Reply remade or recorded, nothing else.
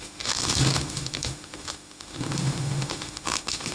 remade